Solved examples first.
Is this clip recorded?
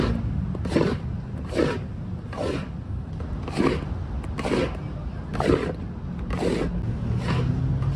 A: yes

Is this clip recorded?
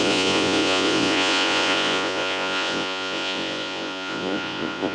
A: no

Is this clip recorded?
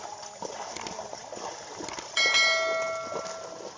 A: yes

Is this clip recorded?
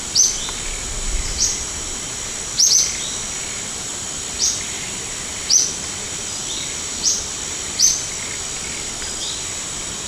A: yes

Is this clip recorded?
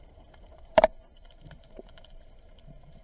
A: no